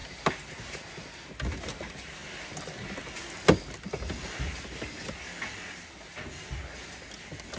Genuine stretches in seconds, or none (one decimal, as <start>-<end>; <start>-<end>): 0.0-7.6